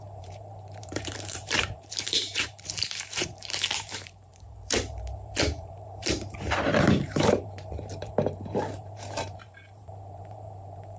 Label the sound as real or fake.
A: fake